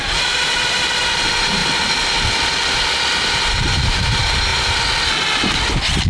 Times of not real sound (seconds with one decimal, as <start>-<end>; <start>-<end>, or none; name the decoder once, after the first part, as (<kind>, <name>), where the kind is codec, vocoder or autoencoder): 0.0-1.6 (vocoder, BigVGAN v2); 3.1-4.5